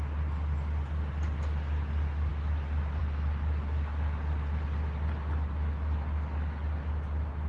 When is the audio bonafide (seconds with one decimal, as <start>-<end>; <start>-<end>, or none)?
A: 0.0-7.5